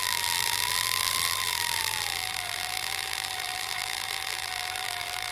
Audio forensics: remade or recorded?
remade